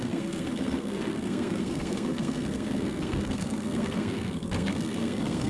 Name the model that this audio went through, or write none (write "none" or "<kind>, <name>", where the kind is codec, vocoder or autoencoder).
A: codec, SNAC